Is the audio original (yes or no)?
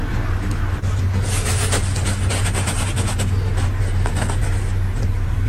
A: yes